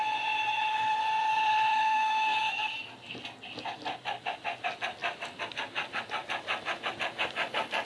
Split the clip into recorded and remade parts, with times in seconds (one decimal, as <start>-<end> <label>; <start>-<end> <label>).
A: 0.0-1.7 recorded; 1.7-2.9 remade; 2.9-7.9 recorded